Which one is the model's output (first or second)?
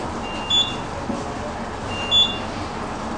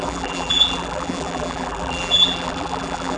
second